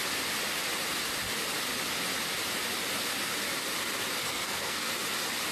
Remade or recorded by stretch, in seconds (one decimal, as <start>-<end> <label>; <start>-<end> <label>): 0.0-4.2 recorded; 4.2-4.9 remade; 4.9-5.5 recorded

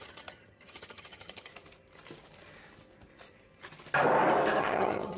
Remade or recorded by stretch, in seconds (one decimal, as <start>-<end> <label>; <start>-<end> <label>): 0.0-1.5 remade; 1.5-4.6 recorded; 4.6-5.2 remade